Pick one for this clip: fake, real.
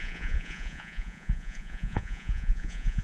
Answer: fake